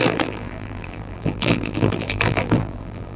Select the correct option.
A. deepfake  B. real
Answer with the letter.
A